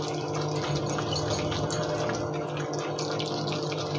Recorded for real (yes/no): yes